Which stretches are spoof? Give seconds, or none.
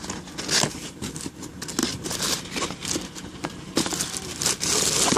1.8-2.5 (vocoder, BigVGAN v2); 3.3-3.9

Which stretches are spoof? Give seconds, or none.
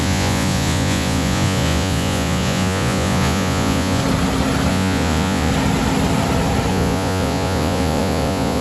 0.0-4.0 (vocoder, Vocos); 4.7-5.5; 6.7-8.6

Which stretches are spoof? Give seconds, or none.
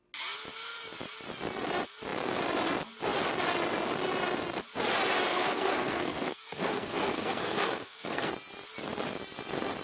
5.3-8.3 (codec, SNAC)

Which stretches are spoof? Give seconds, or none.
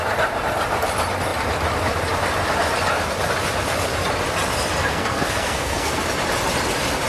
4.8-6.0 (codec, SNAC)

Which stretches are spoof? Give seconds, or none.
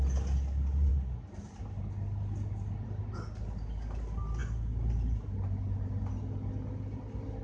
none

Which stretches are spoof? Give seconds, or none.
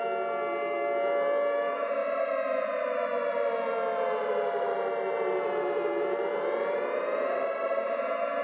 0.0-2.0 (vocoder, BigVGAN v2); 4.2-8.4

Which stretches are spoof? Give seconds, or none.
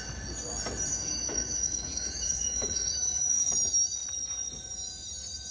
0.9-3.5 (autoencoder, DAC-VAE)